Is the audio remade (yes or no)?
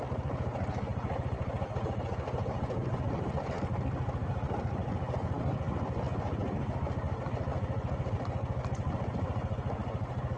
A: no